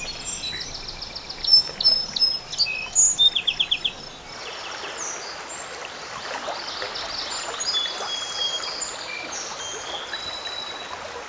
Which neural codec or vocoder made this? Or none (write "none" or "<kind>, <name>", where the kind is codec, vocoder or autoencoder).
none